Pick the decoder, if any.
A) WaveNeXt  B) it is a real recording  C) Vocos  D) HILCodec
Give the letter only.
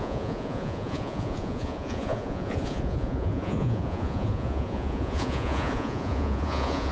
C